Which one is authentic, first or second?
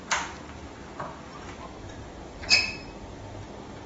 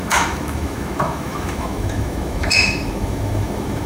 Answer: first